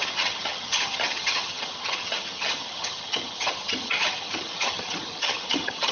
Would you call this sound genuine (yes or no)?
no